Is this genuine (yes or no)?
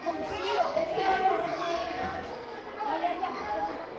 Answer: no